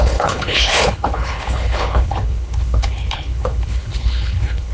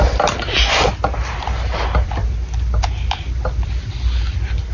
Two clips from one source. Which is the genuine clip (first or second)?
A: second